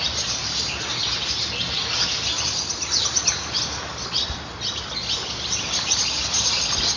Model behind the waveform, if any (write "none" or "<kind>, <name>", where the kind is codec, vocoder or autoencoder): none